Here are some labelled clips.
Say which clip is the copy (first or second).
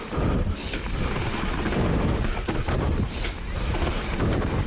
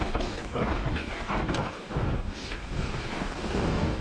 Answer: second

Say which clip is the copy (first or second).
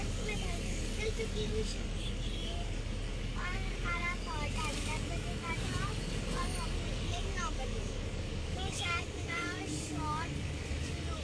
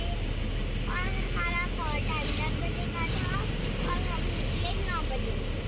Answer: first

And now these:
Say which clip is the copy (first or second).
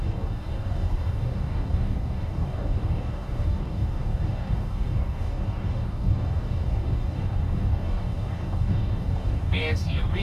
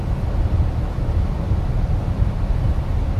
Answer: first